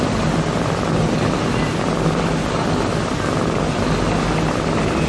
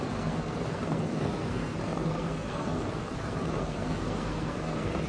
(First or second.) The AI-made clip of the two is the second